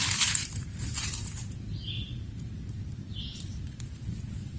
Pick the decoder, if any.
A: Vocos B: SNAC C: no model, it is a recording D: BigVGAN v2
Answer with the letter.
D